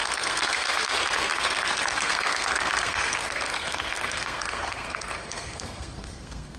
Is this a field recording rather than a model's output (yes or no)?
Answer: no